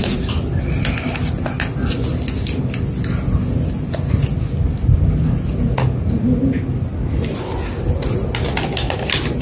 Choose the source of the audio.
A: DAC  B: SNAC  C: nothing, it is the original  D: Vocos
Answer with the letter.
C